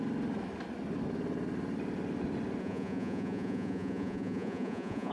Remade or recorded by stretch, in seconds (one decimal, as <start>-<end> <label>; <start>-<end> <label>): 0.0-2.6 recorded; 2.6-5.1 remade